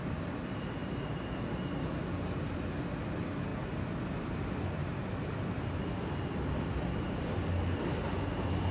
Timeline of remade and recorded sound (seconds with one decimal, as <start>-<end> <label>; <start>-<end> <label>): 0.0-3.5 recorded; 3.5-5.0 remade; 5.0-8.7 recorded